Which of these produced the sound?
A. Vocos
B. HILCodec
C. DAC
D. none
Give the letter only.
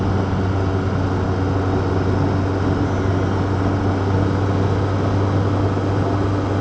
D